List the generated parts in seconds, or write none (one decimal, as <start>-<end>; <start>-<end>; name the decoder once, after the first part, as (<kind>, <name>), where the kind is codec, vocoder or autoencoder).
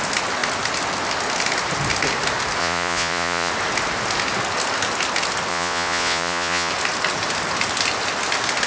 2.6-3.5 (vocoder, Vocos); 5.5-6.7